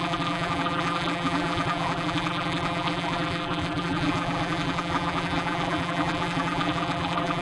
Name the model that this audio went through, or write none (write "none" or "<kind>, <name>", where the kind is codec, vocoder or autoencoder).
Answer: vocoder, BigVGAN v2